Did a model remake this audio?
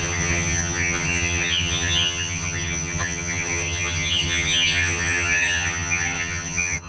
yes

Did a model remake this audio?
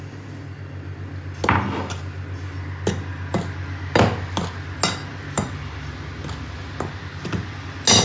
no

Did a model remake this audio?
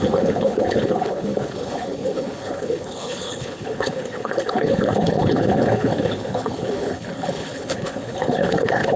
yes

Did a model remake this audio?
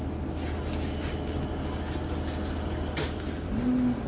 no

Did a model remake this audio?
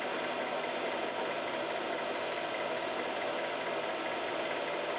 no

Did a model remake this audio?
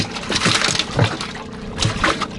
no